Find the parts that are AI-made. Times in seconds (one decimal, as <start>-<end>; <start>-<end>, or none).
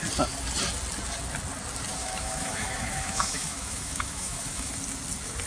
2.0-4.7